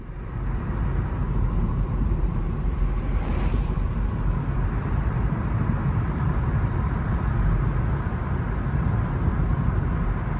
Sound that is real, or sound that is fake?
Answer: fake